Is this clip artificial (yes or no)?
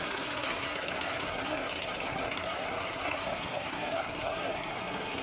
yes